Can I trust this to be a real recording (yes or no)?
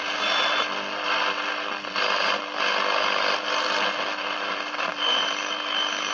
no